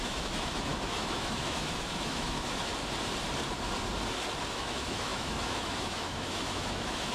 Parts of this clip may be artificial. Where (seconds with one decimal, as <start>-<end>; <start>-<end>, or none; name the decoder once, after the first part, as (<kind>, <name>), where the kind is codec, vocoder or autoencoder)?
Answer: 0.0-2.7 (autoencoder, DAC-VAE); 4.5-7.1